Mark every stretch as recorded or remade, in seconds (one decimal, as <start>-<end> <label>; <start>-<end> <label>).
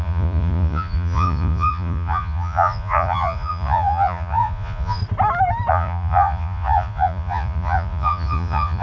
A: 0.0-5.0 remade; 5.0-5.7 recorded; 5.7-8.8 remade